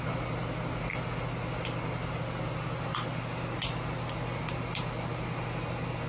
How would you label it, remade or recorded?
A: recorded